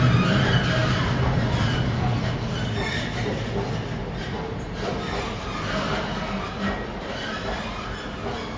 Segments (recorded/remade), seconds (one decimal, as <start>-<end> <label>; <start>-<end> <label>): 0.0-8.6 recorded